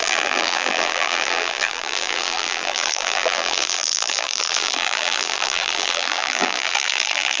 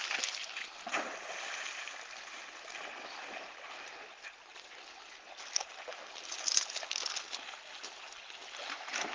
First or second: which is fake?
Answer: first